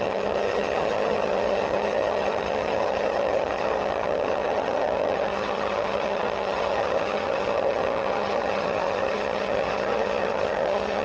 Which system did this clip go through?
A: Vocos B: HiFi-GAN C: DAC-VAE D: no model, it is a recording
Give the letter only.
B